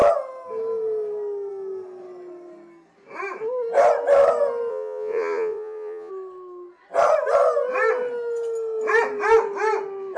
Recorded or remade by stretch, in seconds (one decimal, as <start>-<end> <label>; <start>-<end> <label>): 0.0-4.7 recorded; 4.7-6.1 remade; 6.1-10.2 recorded